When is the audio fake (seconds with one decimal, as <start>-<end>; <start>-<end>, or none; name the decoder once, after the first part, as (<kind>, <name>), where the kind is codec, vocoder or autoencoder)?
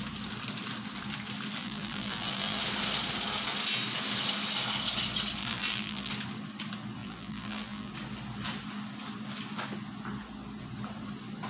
1.6-2.6 (vocoder, BigVGAN v2); 5.4-6.1; 7.0-7.9